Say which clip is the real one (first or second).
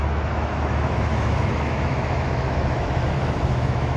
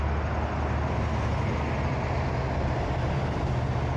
second